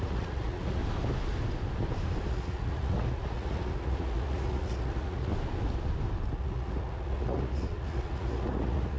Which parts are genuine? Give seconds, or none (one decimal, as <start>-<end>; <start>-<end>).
0.8-2.3; 5.3-6.4